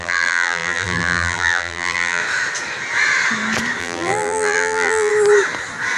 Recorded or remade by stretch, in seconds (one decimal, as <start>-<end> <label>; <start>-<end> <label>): 0.0-2.2 remade; 2.2-3.8 recorded; 3.8-5.1 remade; 5.1-6.0 recorded